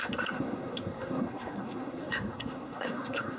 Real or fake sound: fake